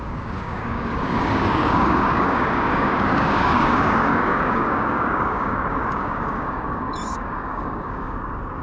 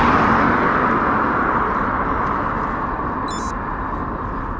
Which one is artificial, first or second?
first